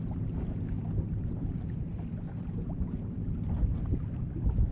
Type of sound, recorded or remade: recorded